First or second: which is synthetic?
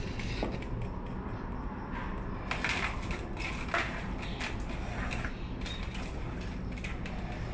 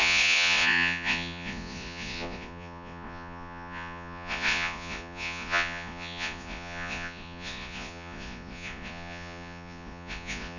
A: second